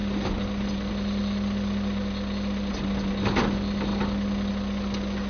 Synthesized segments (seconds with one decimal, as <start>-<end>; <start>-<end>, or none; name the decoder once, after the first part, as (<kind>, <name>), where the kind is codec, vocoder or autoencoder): none